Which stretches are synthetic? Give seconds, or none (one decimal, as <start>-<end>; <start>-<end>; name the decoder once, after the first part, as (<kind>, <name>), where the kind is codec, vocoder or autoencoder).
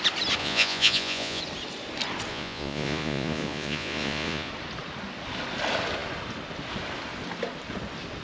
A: 0.4-1.4 (vocoder, Vocos); 2.3-4.5